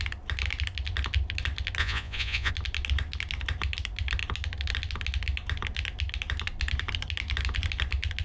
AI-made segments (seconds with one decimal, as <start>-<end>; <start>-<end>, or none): 1.8-2.5